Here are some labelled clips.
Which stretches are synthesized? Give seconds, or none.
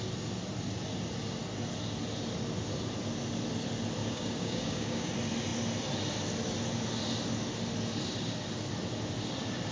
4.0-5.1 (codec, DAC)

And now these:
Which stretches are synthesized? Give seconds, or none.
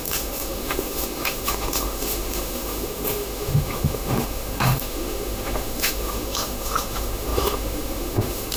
0.0-8.6 (autoencoder, DAC-VAE)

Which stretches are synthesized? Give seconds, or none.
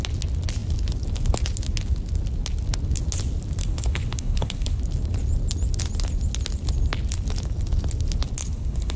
3.6-4.8 (codec, HILCodec); 8.4-9.0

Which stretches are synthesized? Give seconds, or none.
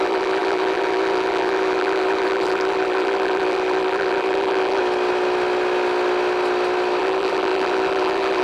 0.0-4.8 (vocoder, BigVGAN v2); 7.0-8.4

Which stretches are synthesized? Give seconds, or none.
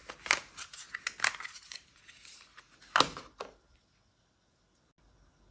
none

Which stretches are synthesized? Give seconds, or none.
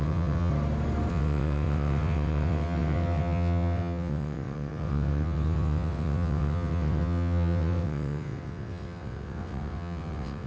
0.0-0.5 (vocoder, WaveNeXt); 1.1-10.5